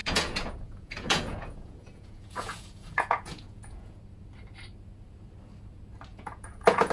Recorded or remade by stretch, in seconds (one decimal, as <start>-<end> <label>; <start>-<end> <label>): 0.0-4.0 remade; 4.0-6.1 recorded; 6.1-6.9 remade